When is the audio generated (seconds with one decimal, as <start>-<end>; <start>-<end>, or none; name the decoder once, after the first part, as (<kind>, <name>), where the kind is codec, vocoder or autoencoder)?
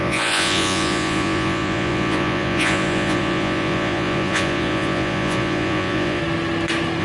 0.0-6.2 (vocoder, Vocos)